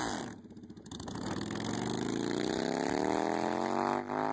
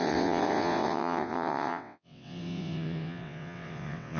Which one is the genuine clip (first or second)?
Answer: first